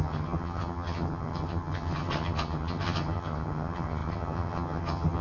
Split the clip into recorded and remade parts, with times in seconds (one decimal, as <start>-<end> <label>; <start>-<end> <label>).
0.0-5.2 remade

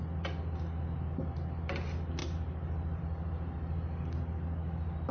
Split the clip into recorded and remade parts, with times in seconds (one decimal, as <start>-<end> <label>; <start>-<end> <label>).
0.0-5.1 recorded